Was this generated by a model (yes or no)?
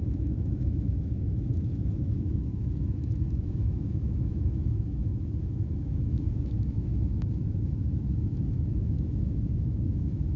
yes